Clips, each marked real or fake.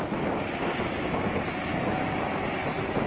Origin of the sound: real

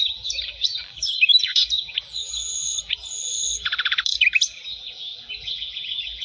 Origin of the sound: fake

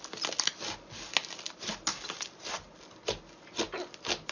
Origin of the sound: real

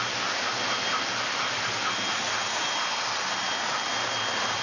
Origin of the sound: real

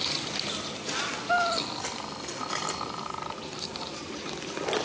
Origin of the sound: real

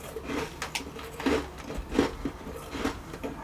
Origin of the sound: real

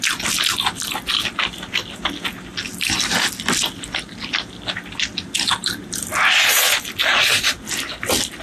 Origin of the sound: real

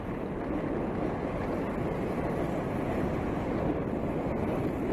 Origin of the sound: real